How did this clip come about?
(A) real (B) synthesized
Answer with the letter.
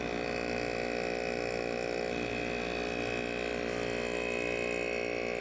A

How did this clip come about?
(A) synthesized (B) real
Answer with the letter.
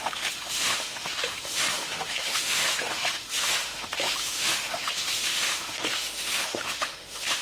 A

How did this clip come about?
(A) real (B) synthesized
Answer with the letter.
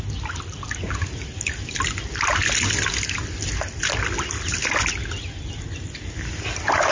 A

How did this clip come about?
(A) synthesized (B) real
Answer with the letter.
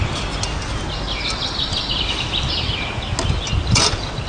B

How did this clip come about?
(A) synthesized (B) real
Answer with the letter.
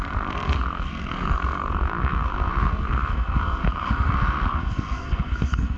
A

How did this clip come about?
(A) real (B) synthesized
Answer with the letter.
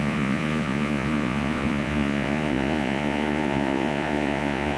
B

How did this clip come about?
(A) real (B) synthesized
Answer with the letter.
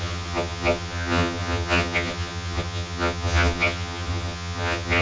B